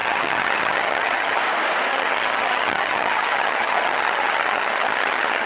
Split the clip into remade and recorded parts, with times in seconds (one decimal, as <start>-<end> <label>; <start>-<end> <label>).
0.0-1.4 remade; 1.4-1.9 recorded; 1.9-5.5 remade